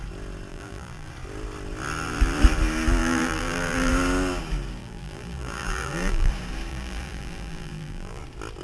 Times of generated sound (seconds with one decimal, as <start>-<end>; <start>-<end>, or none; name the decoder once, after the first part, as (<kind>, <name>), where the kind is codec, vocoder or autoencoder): 0.5-1.1 (vocoder, BigVGAN v2); 3.0-3.9; 4.8-6.3; 6.7-8.2